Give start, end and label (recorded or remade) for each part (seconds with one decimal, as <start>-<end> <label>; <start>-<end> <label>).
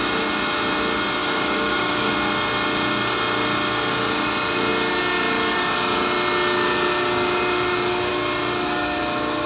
0.0-1.2 recorded; 1.2-2.1 remade; 2.1-9.5 recorded